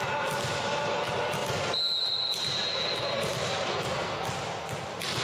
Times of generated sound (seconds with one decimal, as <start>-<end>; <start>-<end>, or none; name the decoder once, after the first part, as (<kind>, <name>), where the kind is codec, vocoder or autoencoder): 3.7-4.2 (codec, SNAC)